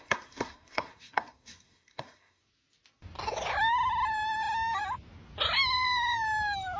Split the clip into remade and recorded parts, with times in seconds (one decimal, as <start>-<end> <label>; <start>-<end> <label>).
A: 0.0-2.4 remade; 2.4-6.8 recorded